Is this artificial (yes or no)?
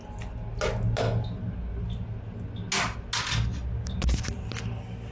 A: no